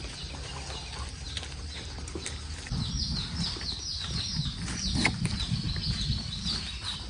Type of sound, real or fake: real